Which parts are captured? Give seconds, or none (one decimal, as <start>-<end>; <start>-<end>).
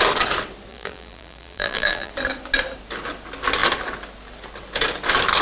0.0-0.7; 2.1-5.4